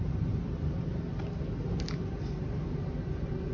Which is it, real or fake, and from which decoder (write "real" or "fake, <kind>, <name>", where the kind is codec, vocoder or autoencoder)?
real